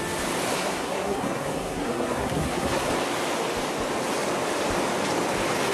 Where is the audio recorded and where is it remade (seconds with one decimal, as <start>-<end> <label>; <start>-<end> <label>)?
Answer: 0.0-0.5 recorded; 0.5-2.9 remade; 2.9-5.7 recorded